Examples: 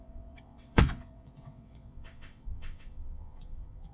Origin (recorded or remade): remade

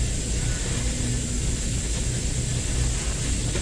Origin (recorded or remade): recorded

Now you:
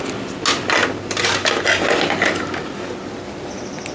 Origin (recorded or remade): recorded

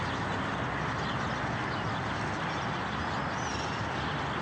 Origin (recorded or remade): recorded